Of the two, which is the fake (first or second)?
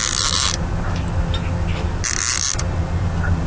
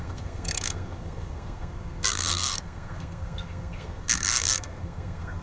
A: second